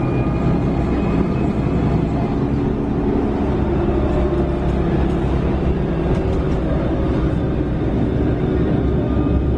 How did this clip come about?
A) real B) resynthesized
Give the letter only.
A